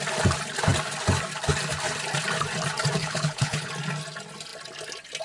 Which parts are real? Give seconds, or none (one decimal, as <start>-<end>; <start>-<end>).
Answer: 0.0-3.0; 3.7-5.2